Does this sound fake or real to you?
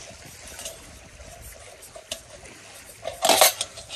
real